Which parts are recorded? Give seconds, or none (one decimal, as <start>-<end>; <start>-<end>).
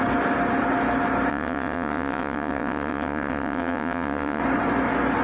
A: 0.0-1.3; 4.4-5.2